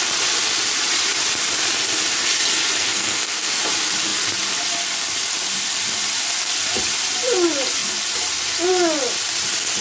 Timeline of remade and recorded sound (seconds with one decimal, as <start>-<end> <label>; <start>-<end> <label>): 0.0-2.8 recorded; 2.8-3.6 remade; 3.6-9.8 recorded